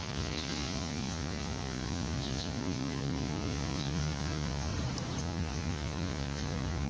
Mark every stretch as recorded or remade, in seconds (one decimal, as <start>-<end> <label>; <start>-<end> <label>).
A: 0.0-4.7 remade; 4.7-5.2 recorded; 5.2-6.9 remade